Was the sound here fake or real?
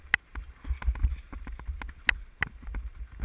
real